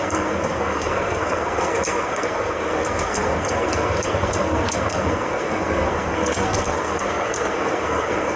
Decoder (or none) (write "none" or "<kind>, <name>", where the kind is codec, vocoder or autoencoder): codec, SNAC